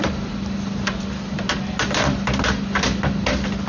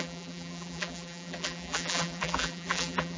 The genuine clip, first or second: first